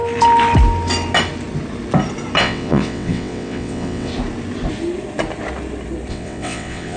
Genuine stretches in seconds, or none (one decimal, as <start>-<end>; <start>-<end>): 0.0-2.4; 4.1-6.1